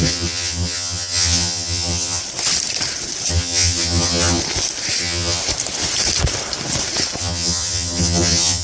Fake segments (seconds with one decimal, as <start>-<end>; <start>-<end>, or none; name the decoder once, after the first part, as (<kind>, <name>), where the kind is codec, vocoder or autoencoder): 0.0-2.2 (vocoder, HiFi-GAN); 3.3-4.4; 5.0-5.4; 7.2-8.6